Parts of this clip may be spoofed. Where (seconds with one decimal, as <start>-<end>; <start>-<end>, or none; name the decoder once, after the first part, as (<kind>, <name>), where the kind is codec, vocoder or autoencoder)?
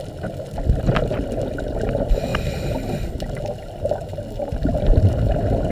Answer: none